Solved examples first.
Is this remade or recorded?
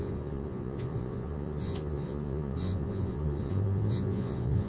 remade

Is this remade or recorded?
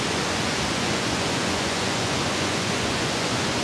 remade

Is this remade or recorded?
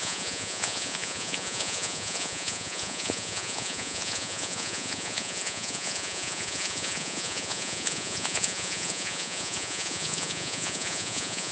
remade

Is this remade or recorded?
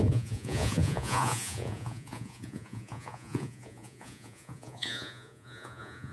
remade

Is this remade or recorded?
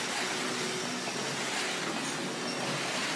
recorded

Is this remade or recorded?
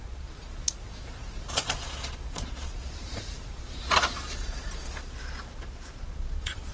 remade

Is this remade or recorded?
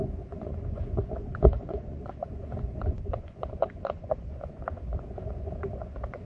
remade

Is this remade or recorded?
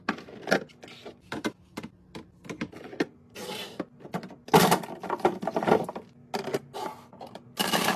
recorded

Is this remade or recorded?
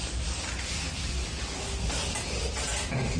recorded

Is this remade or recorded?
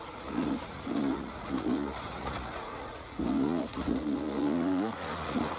remade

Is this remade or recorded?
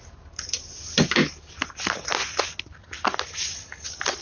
recorded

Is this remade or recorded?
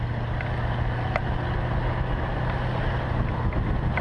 recorded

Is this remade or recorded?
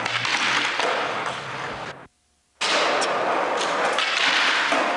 recorded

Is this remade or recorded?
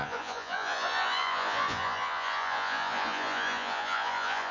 remade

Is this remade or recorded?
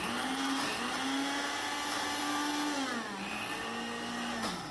recorded